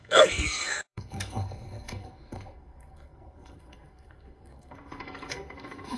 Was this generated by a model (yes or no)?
yes